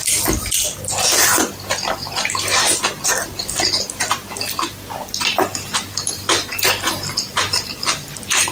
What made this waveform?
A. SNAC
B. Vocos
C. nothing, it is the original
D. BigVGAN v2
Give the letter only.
D